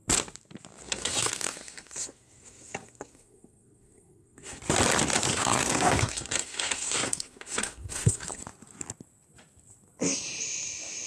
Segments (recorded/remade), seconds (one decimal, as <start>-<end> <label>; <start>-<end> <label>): 0.0-0.8 recorded; 0.8-4.6 remade; 4.6-5.3 recorded; 5.3-8.4 remade; 8.4-11.1 recorded